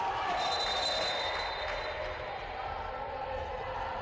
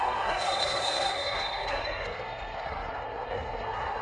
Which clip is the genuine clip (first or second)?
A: first